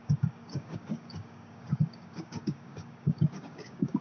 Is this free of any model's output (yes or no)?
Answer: no